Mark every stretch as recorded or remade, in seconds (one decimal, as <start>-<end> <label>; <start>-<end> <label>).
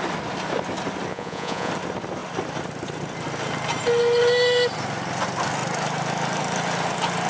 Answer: 0.0-1.1 recorded; 1.1-1.7 remade; 1.7-7.3 recorded